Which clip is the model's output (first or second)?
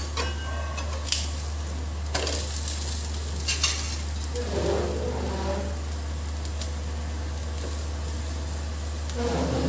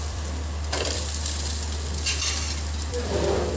second